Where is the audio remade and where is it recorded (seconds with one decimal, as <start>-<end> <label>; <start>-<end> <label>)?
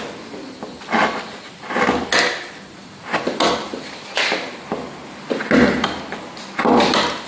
0.0-7.3 recorded